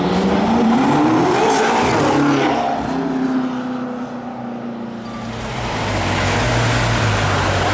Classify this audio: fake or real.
real